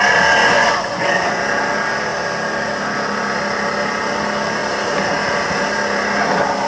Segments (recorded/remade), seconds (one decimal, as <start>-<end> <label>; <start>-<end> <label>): 0.0-0.4 recorded; 0.4-1.4 remade; 1.4-6.7 recorded